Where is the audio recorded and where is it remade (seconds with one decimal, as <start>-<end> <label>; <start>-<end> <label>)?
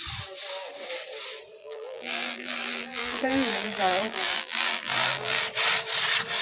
0.0-1.6 recorded; 1.6-5.4 remade; 5.4-6.4 recorded